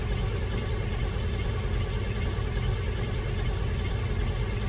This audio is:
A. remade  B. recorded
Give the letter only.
B